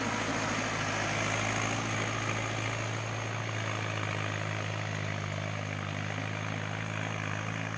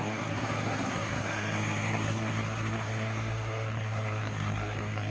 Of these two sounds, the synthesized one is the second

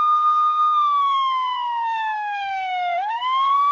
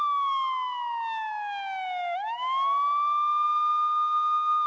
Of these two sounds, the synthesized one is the first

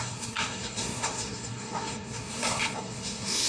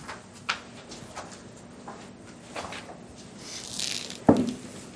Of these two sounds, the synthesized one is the first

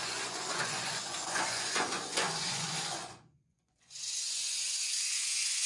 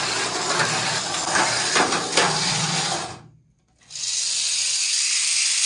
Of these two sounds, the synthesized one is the first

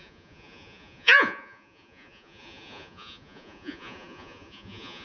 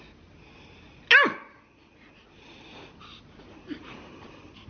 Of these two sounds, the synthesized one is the first